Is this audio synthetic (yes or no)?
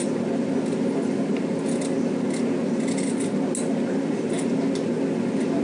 no